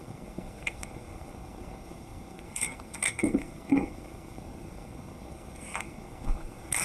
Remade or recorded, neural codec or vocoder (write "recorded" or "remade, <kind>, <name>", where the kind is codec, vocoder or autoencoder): remade, codec, SNAC